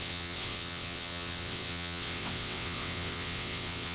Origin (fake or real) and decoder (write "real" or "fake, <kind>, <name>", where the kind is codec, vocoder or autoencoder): fake, vocoder, WaveNeXt